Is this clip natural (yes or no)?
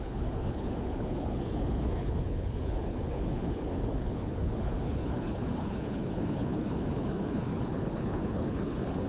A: no